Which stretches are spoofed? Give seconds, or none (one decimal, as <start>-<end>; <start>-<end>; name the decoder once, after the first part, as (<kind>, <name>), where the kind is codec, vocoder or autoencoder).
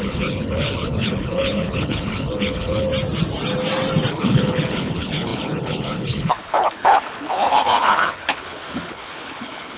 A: 0.0-2.9 (codec, HILCodec); 4.1-9.8